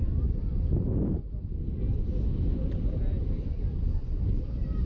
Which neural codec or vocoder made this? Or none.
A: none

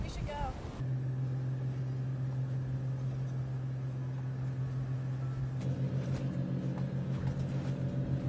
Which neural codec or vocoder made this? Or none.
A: none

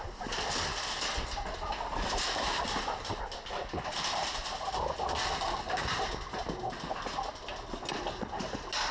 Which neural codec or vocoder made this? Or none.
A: none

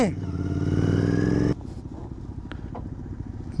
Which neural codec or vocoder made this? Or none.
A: none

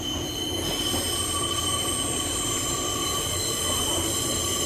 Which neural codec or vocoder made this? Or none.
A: none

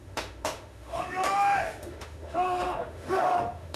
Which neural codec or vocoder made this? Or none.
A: autoencoder, DAC-VAE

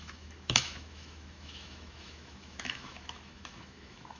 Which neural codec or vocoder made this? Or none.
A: autoencoder, DAC-VAE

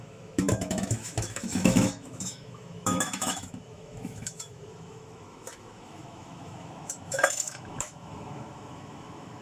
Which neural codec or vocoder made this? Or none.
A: autoencoder, DAC-VAE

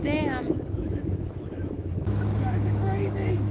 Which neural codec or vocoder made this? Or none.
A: autoencoder, DAC-VAE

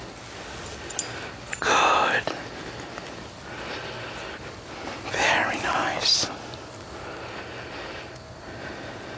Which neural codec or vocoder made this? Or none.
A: none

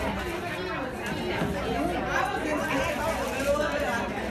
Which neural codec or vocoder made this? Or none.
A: none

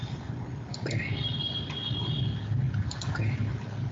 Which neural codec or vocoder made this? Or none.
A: none